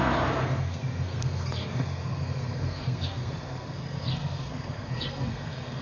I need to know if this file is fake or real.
fake